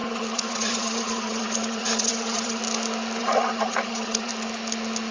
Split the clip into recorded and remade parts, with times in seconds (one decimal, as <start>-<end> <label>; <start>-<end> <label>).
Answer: 0.0-2.6 remade; 2.6-3.2 recorded; 3.2-4.3 remade; 4.3-5.1 recorded